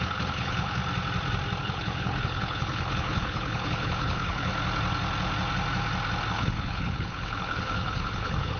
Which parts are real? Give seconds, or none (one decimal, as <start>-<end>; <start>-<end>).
0.8-1.6; 4.5-6.3

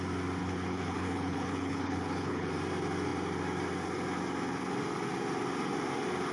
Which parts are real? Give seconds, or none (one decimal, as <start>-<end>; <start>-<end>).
0.0-0.4; 2.5-6.3

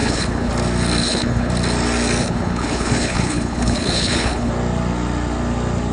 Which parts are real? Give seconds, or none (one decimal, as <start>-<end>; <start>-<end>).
0.5-1.0; 1.5-2.2; 4.5-5.9

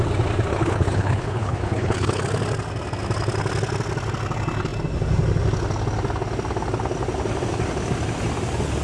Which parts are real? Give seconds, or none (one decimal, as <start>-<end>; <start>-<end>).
0.0-0.5; 2.2-8.8